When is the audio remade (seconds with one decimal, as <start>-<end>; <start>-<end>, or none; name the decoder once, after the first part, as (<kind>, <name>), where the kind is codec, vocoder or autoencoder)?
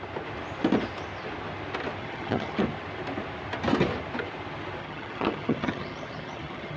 2.0-2.6 (vocoder, HiFi-GAN); 4.8-6.8